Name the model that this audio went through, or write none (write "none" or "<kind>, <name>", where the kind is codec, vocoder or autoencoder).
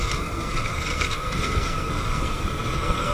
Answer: codec, SNAC